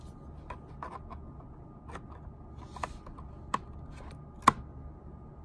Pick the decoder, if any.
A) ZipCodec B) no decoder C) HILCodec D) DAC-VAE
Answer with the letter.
B